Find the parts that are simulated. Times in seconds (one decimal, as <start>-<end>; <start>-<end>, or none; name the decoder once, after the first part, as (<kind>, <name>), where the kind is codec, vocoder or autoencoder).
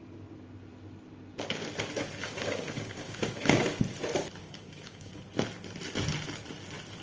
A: 2.2-3.8 (codec, DAC); 4.4-5.2